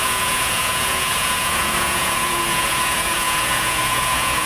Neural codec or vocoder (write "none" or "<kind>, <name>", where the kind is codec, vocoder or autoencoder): vocoder, Vocos